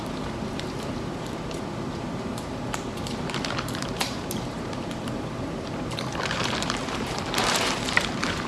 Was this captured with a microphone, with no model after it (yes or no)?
no